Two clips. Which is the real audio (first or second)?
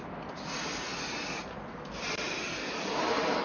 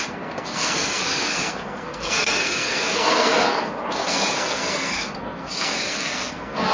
first